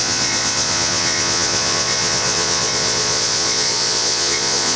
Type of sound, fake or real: fake